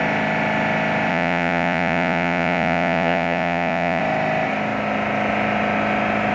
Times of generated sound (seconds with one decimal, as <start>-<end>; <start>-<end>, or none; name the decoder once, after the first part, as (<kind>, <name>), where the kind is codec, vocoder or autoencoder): 1.1-4.0 (vocoder, Vocos)